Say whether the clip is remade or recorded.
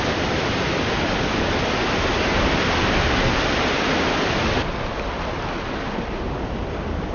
recorded